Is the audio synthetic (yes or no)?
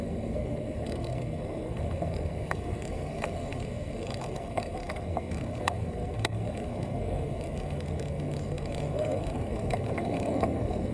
yes